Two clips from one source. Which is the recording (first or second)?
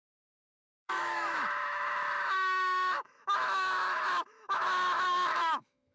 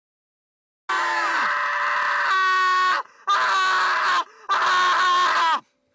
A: second